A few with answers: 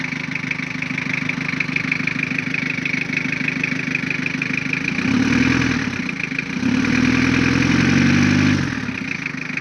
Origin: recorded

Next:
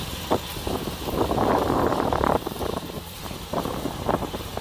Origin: remade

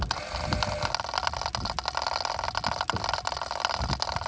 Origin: recorded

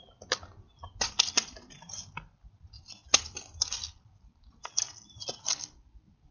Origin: recorded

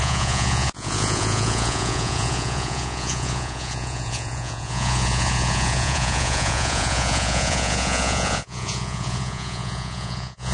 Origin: remade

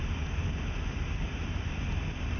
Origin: remade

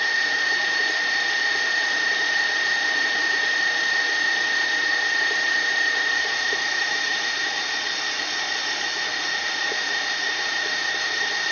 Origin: recorded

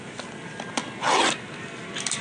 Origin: recorded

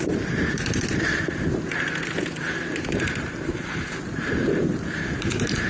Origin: remade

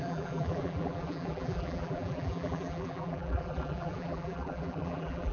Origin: remade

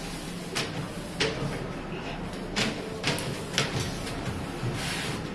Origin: recorded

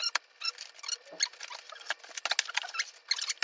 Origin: recorded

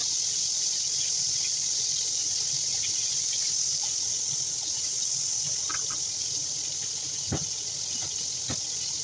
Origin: recorded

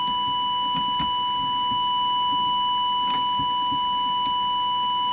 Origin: recorded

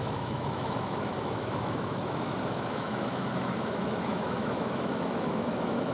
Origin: remade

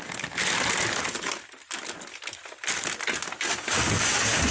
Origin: recorded